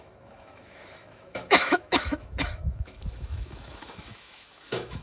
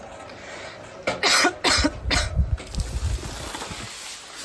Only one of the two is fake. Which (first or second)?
first